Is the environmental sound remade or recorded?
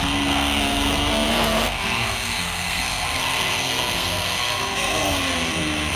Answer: remade